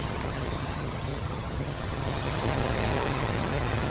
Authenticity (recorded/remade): remade